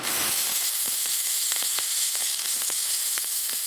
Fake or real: fake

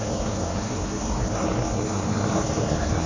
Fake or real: fake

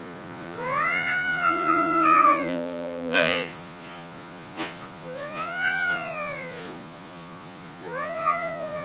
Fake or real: fake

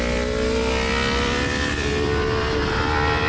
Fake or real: real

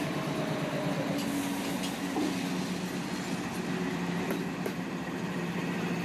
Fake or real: real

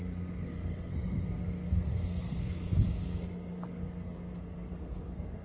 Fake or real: fake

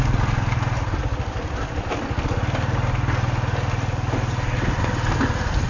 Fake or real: real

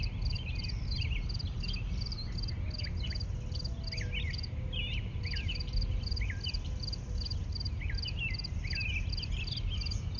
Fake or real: real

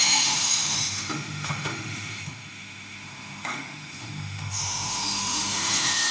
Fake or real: fake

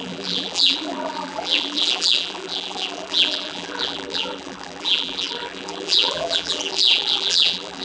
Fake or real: fake